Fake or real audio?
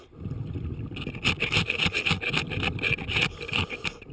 real